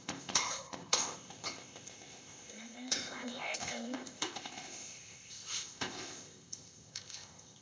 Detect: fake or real fake